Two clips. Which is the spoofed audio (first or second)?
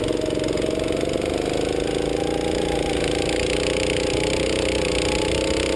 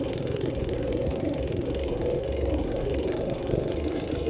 second